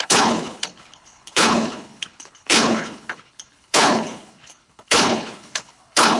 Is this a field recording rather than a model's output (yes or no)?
no